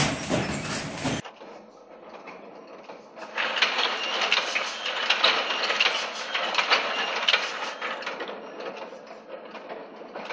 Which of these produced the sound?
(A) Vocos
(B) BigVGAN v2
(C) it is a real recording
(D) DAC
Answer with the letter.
C